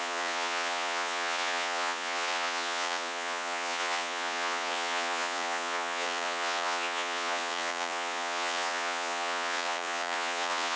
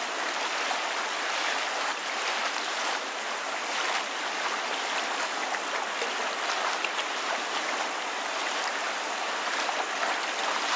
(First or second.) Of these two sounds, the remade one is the first